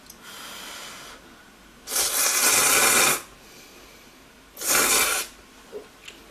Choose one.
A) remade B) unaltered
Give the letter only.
B